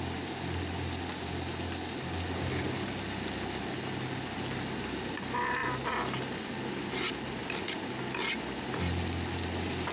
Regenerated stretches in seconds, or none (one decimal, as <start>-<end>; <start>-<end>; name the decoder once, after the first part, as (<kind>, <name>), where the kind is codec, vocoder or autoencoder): none

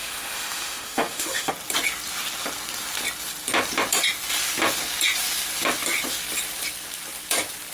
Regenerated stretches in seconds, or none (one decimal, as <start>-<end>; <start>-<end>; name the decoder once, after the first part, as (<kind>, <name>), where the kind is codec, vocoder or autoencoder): 0.0-1.5 (autoencoder, DAC-VAE)

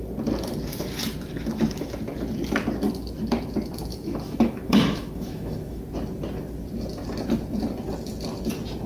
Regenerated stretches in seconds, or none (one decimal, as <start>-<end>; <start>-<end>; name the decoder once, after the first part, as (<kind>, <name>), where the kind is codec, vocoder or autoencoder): 3.9-5.8 (autoencoder, DAC-VAE)

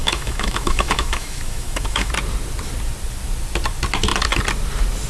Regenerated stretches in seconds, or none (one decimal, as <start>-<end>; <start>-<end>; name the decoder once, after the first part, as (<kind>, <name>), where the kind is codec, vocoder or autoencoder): 0.0-2.1 (autoencoder, DAC-VAE)

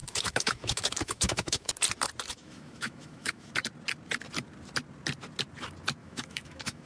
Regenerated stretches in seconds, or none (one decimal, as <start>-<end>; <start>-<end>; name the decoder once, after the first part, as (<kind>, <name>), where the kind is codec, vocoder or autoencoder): 0.0-1.7 (autoencoder, DAC-VAE); 2.3-3.5; 6.0-6.9

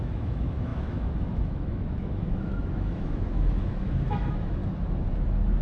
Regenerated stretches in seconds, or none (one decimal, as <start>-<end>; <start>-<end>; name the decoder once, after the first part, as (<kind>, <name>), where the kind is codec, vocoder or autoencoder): 0.0-4.6 (autoencoder, DAC-VAE)

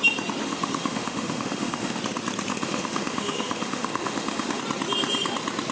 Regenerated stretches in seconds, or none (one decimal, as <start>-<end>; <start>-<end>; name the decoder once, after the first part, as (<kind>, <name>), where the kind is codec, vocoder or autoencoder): 0.4-2.0 (autoencoder, DAC-VAE); 2.5-4.6